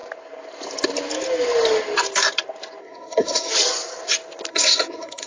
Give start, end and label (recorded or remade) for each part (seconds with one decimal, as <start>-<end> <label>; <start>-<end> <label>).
0.0-2.8 recorded; 2.8-3.5 remade; 3.5-4.5 recorded; 4.5-5.3 remade